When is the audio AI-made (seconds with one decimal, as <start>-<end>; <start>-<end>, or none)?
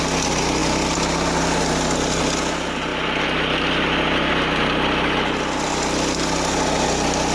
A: none